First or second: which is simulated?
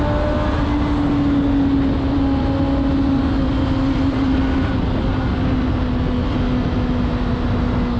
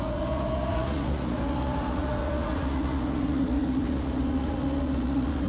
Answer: second